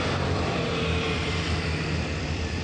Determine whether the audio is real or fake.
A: fake